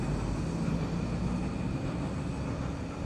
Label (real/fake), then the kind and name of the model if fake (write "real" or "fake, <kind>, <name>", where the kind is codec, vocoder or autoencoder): real